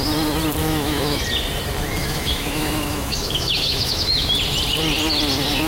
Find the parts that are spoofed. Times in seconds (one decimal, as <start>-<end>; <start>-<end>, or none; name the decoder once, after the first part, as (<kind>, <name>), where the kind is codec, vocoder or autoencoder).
0.6-1.2 (autoencoder, DAC-VAE); 2.0-4.3